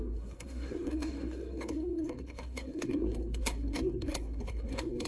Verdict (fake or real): fake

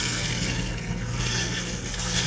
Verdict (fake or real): fake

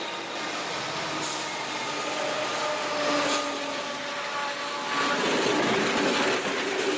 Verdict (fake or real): real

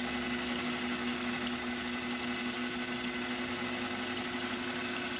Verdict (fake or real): real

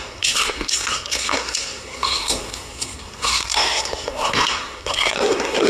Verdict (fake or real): fake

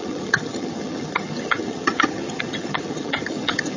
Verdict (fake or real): fake